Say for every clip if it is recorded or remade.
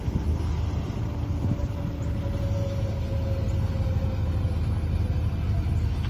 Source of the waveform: recorded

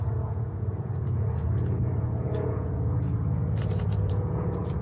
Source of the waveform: remade